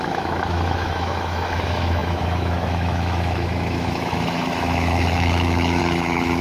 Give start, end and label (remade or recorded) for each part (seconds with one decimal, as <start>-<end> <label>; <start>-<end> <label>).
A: 0.0-6.4 remade